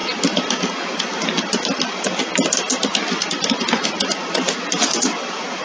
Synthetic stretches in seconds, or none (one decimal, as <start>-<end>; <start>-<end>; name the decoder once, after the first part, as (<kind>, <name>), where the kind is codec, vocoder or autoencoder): 4.9-5.6 (vocoder, BigVGAN v2)